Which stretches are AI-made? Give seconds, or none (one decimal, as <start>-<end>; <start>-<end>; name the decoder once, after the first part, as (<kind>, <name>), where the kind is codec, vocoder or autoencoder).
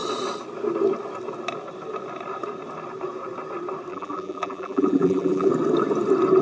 3.9-5.5 (vocoder, BigVGAN v2)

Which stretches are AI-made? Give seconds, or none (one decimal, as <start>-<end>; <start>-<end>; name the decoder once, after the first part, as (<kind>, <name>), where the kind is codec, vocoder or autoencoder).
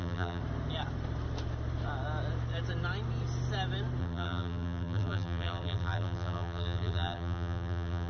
0.0-0.4 (vocoder, BigVGAN v2); 4.0-8.1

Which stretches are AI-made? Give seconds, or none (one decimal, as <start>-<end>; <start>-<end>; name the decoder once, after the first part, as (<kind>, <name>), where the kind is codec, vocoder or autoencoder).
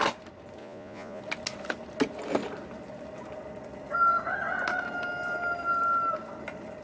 0.6-1.2 (vocoder, Vocos)